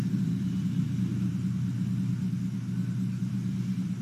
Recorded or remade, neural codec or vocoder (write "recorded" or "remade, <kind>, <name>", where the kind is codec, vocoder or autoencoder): recorded